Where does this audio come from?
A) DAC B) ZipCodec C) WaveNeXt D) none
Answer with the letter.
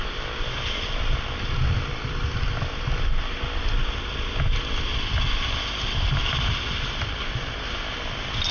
D